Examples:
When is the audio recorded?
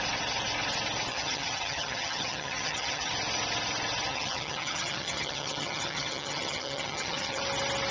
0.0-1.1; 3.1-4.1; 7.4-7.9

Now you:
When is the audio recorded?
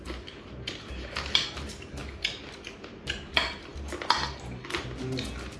2.0-2.8; 3.7-5.6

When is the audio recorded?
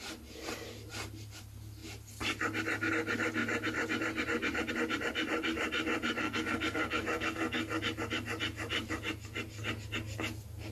0.0-6.2; 7.8-10.7